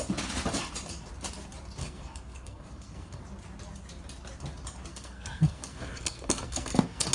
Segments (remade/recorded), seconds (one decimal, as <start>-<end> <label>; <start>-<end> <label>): 0.0-1.8 recorded; 1.8-3.2 remade; 3.2-4.9 recorded; 4.9-7.1 remade